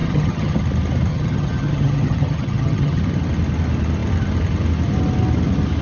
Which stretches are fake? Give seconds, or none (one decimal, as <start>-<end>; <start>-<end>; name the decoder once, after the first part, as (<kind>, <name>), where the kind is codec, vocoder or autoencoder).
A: 0.0-0.6 (vocoder, HiFi-GAN); 1.1-3.0